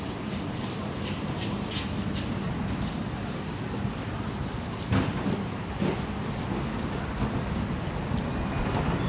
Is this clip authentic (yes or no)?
yes